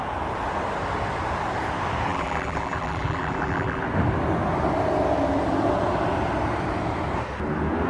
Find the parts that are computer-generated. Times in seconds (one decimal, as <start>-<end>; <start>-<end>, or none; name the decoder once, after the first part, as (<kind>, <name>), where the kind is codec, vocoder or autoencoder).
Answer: 2.1-3.8 (vocoder, BigVGAN v2)